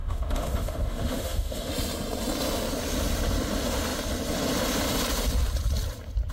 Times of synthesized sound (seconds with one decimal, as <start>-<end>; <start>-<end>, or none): 0.0-1.7